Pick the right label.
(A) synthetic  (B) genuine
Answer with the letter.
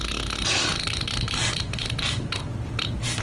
B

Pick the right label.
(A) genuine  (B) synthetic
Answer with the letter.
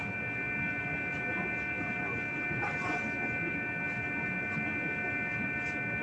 A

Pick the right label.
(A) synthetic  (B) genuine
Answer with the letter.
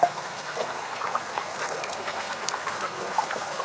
A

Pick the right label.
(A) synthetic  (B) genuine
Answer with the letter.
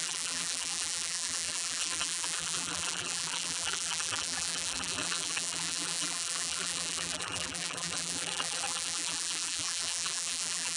A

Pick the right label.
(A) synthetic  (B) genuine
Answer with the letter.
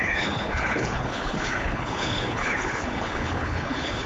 A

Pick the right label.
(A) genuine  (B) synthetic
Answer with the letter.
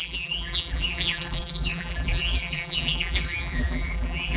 B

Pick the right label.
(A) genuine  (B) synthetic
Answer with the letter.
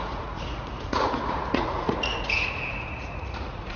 B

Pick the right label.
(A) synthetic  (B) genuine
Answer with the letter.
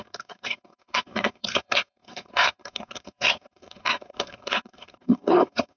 A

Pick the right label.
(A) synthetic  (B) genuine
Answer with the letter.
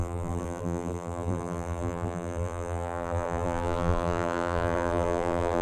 A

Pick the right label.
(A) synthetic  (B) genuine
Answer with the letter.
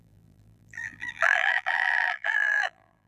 A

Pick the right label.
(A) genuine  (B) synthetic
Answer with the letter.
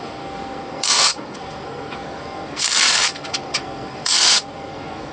B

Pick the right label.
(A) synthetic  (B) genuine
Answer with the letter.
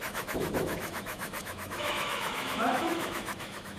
A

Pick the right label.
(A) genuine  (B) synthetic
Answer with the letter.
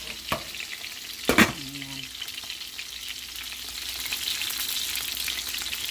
A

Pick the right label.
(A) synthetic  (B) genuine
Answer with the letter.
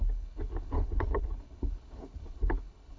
A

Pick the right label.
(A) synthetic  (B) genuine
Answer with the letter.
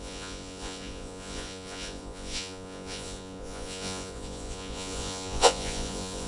A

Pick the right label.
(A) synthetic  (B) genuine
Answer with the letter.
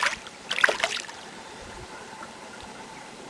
A